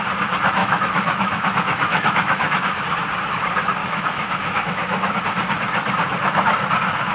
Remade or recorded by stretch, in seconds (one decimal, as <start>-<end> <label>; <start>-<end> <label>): 0.0-0.6 recorded; 0.6-2.8 remade; 2.8-3.8 recorded; 3.8-5.2 remade; 5.2-7.1 recorded